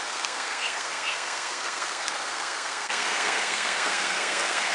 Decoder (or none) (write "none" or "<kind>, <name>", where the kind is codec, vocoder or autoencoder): codec, SNAC